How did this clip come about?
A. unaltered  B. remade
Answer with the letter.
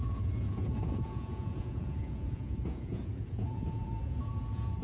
B